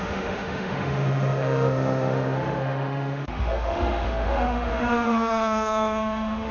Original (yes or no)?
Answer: no